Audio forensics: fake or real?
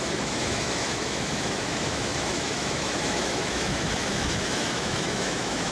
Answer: fake